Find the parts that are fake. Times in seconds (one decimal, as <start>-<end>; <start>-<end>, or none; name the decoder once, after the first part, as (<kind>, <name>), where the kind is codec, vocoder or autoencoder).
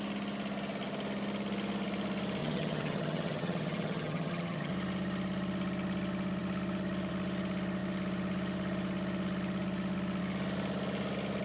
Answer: 2.4-4.7 (vocoder, HiFi-GAN)